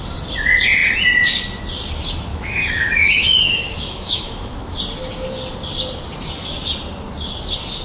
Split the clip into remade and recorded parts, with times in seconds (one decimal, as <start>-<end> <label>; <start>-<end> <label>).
0.0-2.3 recorded; 2.3-4.8 remade; 4.8-7.8 recorded